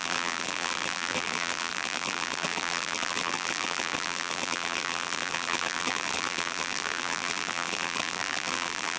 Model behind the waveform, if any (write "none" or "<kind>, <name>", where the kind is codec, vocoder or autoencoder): vocoder, BigVGAN v2